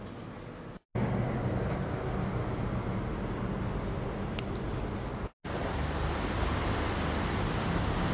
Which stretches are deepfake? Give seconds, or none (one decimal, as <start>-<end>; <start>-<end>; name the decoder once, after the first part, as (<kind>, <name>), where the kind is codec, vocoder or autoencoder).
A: none